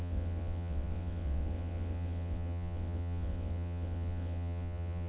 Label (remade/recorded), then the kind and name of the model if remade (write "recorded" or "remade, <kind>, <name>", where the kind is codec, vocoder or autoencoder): remade, vocoder, WaveNeXt